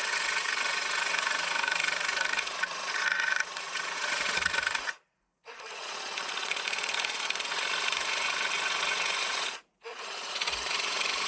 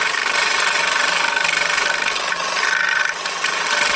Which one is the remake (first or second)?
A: first